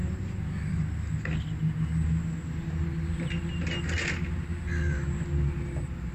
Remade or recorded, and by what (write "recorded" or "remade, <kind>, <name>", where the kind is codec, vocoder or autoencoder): recorded